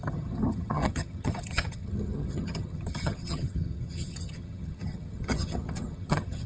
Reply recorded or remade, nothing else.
remade